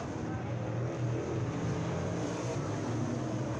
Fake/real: real